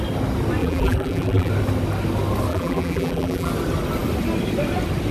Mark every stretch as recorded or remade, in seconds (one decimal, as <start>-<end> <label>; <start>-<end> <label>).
0.0-0.6 recorded; 0.6-1.5 remade; 1.5-2.5 recorded; 2.5-3.5 remade; 3.5-5.1 recorded